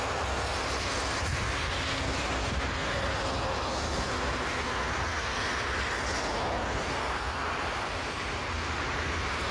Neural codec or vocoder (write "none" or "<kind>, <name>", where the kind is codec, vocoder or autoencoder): none